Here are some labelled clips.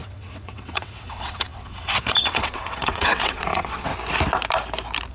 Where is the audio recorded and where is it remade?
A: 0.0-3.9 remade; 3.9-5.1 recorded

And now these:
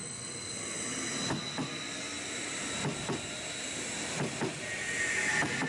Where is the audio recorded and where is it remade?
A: 0.0-5.7 recorded

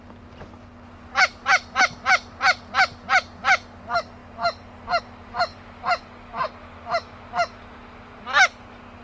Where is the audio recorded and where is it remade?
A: 0.0-5.5 recorded; 5.5-6.0 remade; 6.0-9.0 recorded

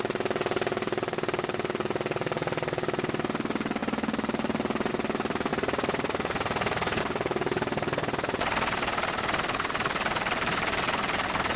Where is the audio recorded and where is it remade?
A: 0.0-11.6 recorded

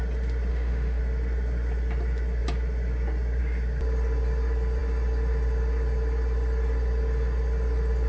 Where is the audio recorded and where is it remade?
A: 0.0-0.5 recorded; 0.5-1.0 remade; 1.0-8.1 recorded

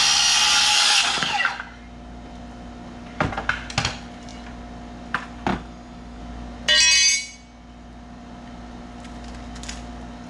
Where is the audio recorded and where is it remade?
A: 0.0-0.7 recorded; 0.7-1.6 remade; 1.6-5.5 recorded; 5.5-6.2 remade; 6.2-10.3 recorded

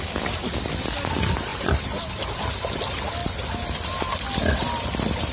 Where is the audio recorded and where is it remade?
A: 0.0-1.5 recorded; 1.5-2.5 remade; 2.5-5.3 recorded